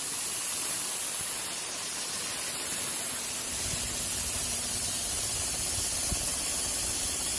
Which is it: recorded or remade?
recorded